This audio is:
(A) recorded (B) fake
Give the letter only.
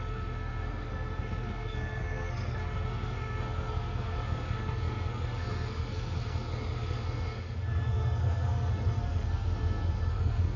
B